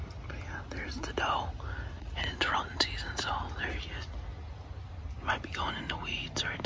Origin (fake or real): real